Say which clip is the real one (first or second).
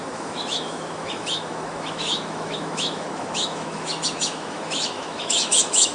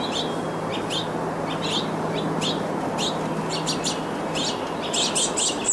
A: second